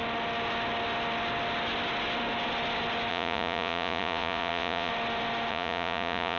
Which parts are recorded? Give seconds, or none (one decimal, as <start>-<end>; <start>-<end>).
0.0-3.1; 4.9-5.5